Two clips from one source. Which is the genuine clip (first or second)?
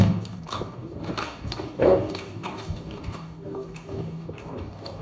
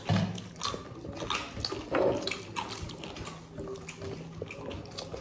second